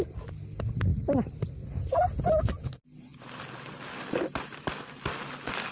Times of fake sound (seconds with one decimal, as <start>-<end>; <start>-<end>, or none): none

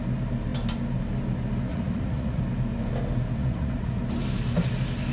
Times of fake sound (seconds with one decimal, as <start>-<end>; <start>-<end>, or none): 1.7-2.4; 3.4-4.0

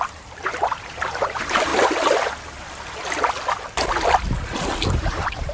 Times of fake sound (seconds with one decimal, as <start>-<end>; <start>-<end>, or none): 0.0-1.7; 4.9-5.5